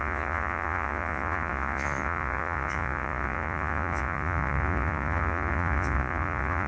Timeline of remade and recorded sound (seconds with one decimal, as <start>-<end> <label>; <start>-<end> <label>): 0.0-6.7 remade